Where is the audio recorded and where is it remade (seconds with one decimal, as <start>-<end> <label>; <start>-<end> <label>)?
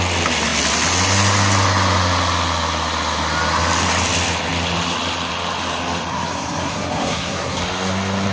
0.0-6.1 recorded; 6.1-7.6 remade; 7.6-8.3 recorded